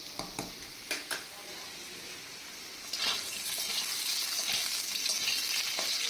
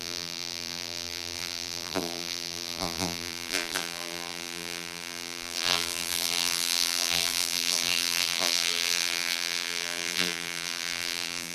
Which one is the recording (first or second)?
first